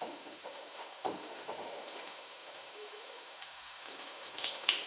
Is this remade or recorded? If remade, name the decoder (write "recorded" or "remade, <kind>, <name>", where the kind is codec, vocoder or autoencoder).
remade, autoencoder, DAC-VAE